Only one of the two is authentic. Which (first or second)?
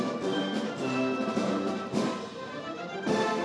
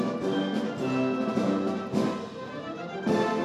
second